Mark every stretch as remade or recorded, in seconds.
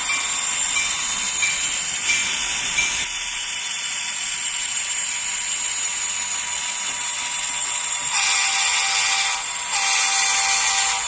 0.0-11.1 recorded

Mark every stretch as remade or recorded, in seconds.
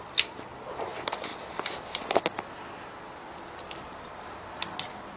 0.0-5.2 recorded